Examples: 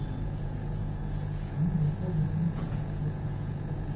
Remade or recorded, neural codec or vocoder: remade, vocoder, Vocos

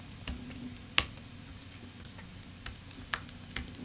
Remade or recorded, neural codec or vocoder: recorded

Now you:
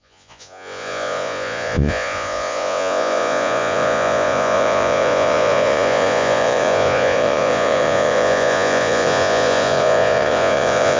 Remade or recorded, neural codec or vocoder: remade, vocoder, Vocos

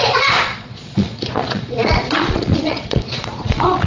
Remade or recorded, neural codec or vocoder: remade, vocoder, Vocos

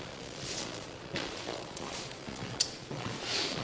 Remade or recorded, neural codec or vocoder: remade, vocoder, Vocos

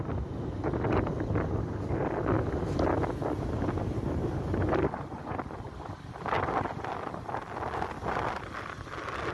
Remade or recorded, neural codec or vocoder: recorded